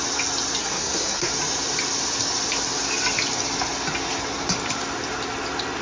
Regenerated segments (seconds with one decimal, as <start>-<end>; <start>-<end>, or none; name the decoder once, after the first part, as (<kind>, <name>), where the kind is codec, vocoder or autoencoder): 0.6-1.3 (codec, SNAC)